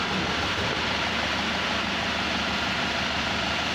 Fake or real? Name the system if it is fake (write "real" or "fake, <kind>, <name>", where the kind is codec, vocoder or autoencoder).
real